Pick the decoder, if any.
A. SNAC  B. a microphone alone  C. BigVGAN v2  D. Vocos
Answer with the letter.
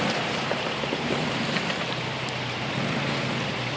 C